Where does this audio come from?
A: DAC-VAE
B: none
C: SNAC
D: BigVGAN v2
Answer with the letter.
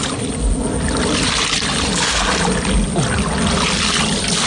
B